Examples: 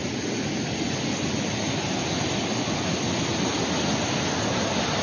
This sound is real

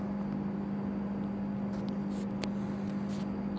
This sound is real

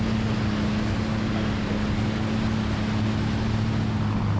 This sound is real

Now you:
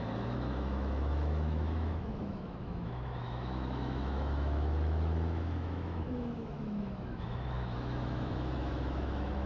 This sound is fake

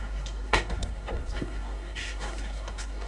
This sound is fake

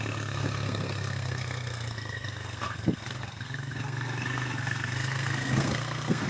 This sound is fake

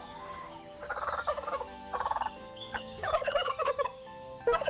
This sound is fake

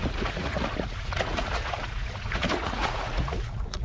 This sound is fake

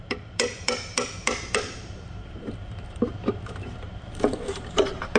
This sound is fake